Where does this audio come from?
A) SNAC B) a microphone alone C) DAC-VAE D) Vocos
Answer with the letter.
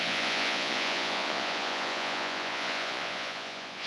D